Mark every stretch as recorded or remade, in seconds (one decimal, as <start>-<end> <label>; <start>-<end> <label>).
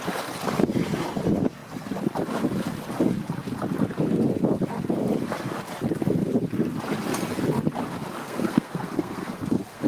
0.0-8.2 recorded; 8.2-9.9 remade